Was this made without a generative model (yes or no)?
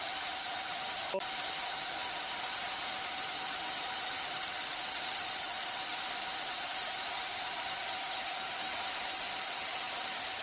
yes